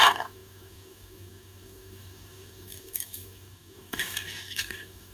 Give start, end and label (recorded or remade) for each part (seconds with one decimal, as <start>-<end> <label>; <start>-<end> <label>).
0.0-5.1 remade